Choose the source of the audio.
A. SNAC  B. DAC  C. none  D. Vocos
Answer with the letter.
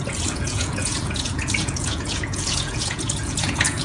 D